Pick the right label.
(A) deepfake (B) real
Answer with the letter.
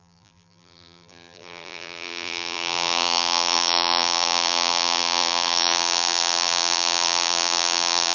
A